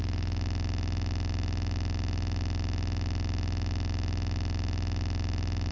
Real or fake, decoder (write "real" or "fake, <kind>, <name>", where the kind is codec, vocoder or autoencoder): fake, vocoder, BigVGAN v2